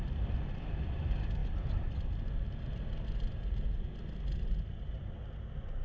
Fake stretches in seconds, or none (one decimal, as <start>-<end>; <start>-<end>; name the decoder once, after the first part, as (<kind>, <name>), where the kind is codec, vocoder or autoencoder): none